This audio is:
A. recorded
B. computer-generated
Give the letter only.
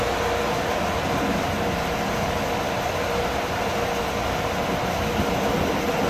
A